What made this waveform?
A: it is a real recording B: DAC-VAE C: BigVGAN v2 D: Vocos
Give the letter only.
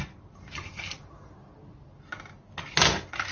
A